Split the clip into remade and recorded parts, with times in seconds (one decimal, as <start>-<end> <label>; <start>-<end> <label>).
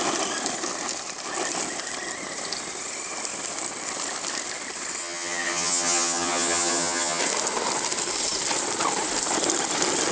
0.0-5.0 recorded; 5.0-7.2 remade; 7.2-10.1 recorded